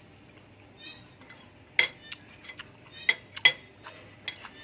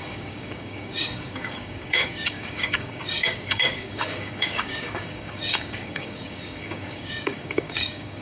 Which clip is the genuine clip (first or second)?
first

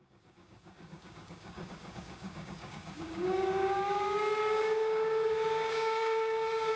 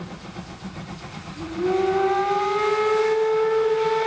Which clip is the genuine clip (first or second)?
second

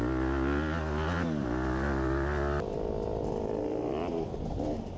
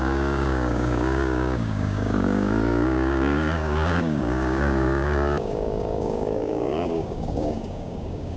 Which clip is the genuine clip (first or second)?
first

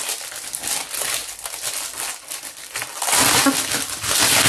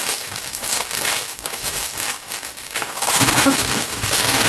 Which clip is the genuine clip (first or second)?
first